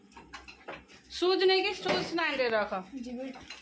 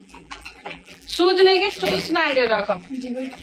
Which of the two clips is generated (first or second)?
second